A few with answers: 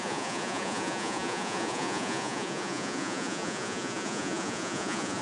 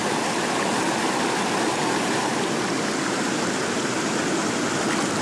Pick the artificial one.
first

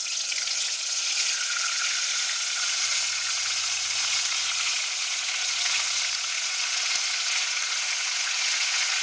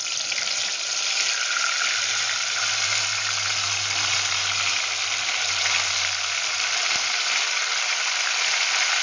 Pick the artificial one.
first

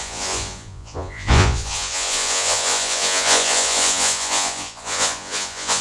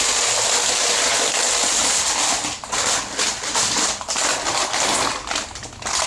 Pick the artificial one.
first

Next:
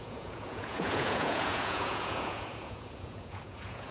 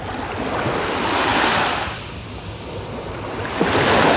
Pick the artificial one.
first